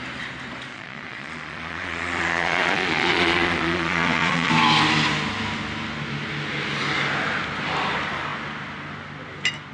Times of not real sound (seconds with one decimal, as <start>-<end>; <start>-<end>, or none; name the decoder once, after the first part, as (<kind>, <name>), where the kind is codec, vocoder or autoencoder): 0.7-4.5 (vocoder, Vocos)